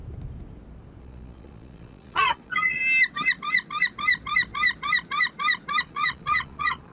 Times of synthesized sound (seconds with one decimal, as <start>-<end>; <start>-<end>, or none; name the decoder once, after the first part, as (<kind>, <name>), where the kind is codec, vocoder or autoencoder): 1.0-2.8 (vocoder, Vocos); 5.8-6.9